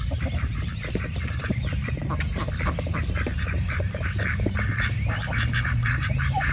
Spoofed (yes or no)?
yes